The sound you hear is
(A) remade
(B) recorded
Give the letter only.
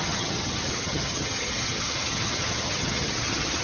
A